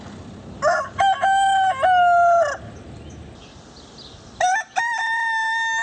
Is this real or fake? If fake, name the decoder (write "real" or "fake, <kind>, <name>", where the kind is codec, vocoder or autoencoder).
real